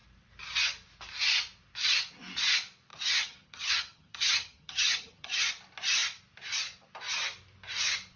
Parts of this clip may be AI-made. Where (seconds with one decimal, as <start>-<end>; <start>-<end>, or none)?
2.9-5.5